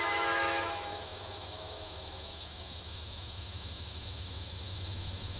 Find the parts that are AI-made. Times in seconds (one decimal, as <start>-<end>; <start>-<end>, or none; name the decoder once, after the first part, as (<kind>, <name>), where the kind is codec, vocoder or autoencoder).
0.0-5.4 (autoencoder, DAC-VAE)